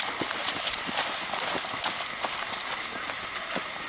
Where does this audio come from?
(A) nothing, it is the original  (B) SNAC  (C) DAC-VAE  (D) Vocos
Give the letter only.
A